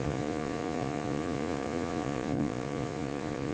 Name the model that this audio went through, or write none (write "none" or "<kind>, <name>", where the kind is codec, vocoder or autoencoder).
vocoder, Vocos